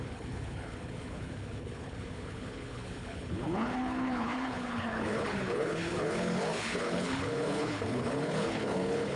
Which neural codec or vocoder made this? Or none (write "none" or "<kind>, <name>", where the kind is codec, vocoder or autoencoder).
codec, HILCodec